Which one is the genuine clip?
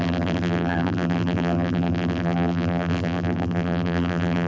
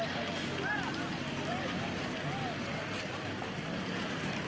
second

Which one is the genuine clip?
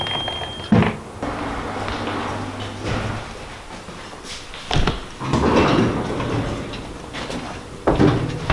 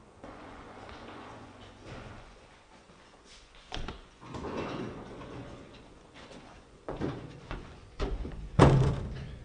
first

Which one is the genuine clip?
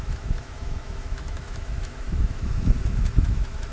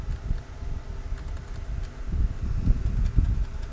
second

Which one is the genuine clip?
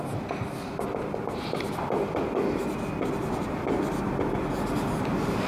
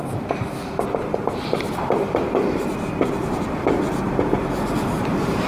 first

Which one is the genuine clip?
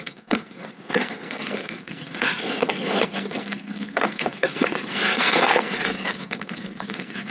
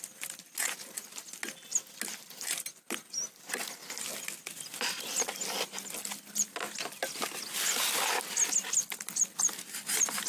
second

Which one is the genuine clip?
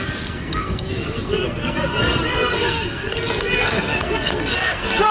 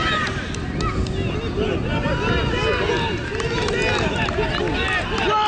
second